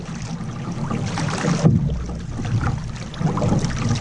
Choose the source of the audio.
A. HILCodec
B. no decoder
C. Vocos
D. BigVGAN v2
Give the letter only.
B